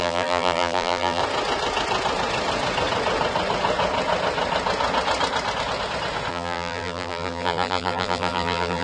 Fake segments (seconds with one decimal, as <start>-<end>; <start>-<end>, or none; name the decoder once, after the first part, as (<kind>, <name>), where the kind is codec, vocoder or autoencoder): 0.0-1.2 (vocoder, BigVGAN v2); 6.3-8.8